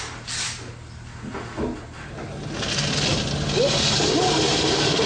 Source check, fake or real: real